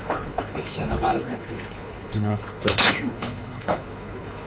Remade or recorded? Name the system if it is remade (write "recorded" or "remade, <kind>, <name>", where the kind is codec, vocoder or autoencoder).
remade, codec, HILCodec